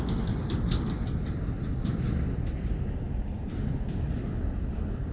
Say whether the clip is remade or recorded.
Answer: recorded